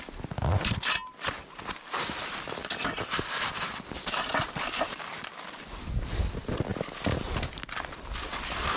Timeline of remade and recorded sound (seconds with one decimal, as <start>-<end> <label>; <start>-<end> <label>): 0.0-2.6 recorded; 2.6-5.0 remade; 5.0-6.7 recorded; 6.7-7.4 remade; 7.4-8.8 recorded